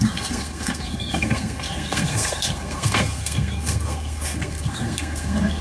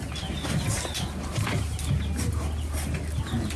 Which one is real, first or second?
second